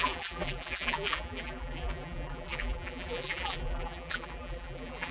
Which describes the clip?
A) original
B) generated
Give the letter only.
B